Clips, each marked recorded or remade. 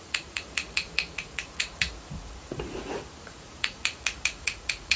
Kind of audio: remade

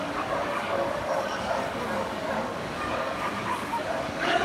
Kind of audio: remade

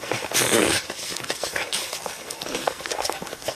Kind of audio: remade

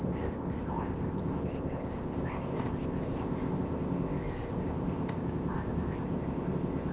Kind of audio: remade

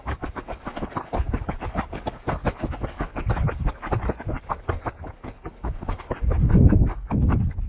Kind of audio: remade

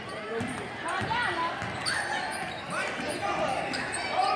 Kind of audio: recorded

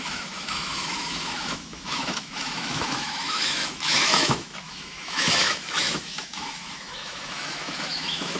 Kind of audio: remade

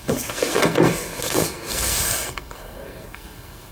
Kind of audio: remade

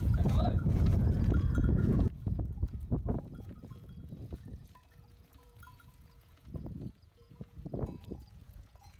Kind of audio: remade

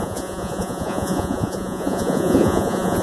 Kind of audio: remade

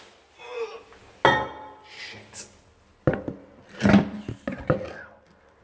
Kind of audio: recorded